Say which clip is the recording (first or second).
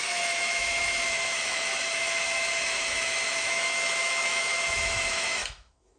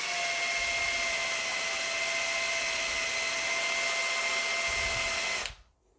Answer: second